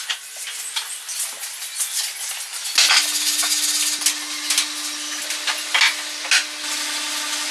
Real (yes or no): yes